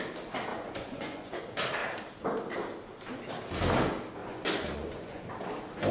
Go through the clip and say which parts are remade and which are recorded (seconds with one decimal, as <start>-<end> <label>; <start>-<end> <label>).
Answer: 0.0-0.5 recorded; 0.5-1.4 remade; 1.4-4.2 recorded; 4.2-5.2 remade; 5.2-5.9 recorded